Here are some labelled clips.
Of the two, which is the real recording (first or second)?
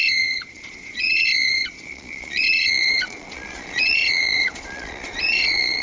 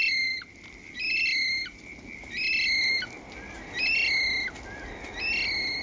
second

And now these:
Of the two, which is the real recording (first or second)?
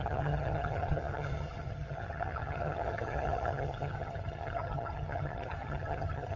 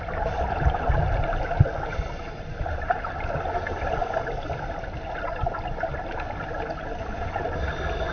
second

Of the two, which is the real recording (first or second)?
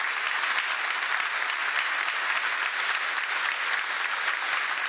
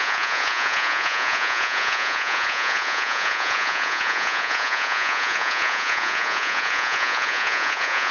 first